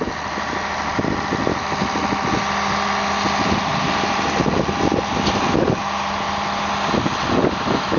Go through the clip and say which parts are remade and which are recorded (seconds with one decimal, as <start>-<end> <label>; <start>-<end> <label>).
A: 0.0-8.0 recorded